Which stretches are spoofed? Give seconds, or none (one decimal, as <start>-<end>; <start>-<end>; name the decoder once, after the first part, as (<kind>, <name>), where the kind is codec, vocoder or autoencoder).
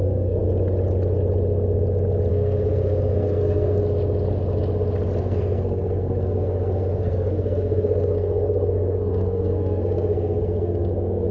0.0-0.4 (codec, SNAC); 2.3-3.8; 5.2-11.3